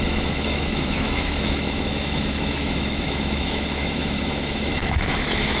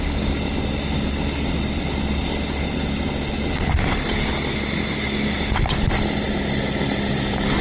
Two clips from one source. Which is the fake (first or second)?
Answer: first